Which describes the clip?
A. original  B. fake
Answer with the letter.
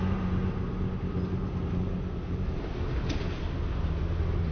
A